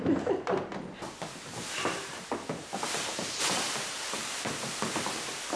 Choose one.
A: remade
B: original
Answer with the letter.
B